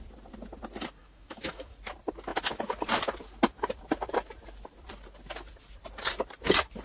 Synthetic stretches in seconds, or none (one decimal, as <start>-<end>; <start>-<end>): 1.0-1.7